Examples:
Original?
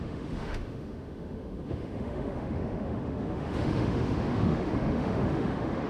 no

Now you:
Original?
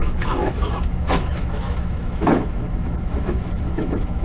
no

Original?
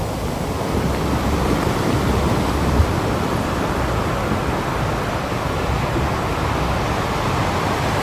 yes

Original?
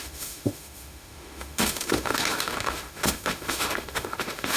no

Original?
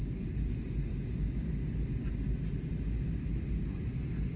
yes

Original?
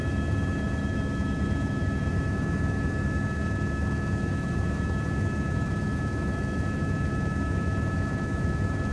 no